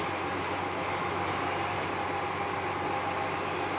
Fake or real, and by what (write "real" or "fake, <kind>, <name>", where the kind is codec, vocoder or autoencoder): real